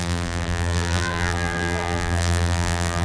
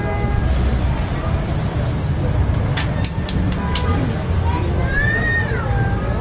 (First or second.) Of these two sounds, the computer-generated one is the first